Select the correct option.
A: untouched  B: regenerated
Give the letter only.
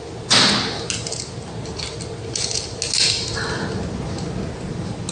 A